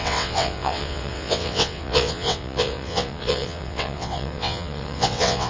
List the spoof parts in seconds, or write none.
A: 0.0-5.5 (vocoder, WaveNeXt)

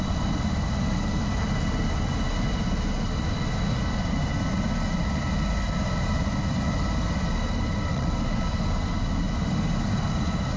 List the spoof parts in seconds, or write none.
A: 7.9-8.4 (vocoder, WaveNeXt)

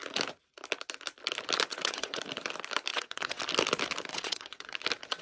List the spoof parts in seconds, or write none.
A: 1.7-2.2 (vocoder, WaveNeXt); 2.9-3.4; 4.1-4.8

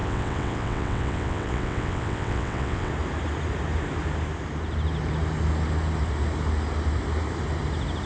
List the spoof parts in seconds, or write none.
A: 0.0-2.9 (vocoder, WaveNeXt)

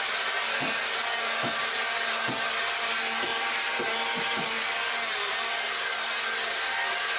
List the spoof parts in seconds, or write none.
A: none